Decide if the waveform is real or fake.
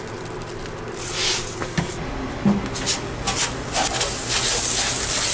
real